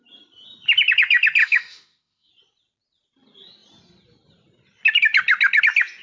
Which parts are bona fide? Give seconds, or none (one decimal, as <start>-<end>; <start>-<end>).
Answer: 0.0-1.4; 2.3-6.0